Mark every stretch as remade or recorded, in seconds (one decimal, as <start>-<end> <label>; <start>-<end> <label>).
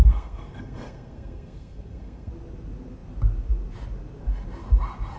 0.0-2.3 remade; 2.3-5.2 recorded